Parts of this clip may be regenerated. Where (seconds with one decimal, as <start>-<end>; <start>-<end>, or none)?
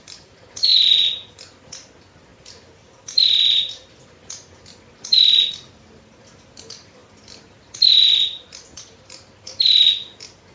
none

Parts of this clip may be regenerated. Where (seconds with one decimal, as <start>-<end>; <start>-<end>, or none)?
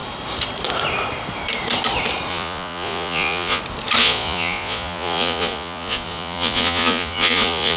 2.3-3.6; 4.0-7.8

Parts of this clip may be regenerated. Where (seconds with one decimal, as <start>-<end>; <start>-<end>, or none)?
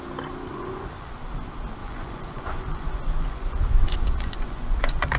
0.5-1.1; 1.8-5.2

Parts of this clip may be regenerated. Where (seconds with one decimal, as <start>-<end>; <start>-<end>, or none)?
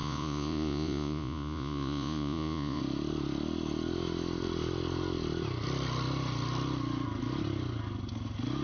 0.0-2.8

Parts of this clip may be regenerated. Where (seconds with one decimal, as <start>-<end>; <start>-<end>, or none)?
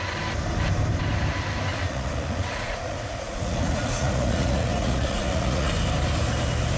1.7-5.7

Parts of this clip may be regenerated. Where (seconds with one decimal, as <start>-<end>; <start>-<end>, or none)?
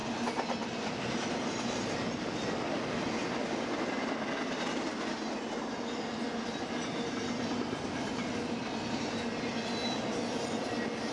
none